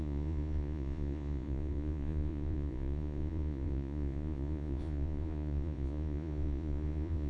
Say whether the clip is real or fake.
fake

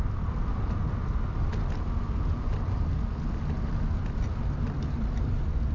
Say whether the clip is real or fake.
real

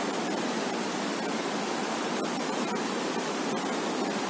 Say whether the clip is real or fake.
real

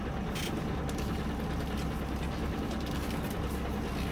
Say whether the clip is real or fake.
real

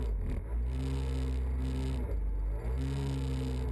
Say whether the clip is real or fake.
real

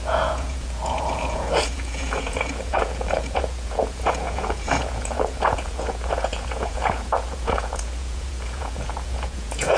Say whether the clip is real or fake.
fake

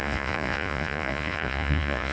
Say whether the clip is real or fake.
fake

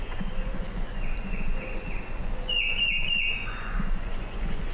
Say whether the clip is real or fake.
fake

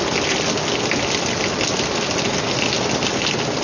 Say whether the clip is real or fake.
real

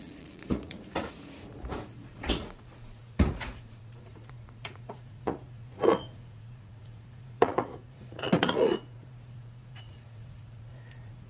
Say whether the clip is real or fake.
fake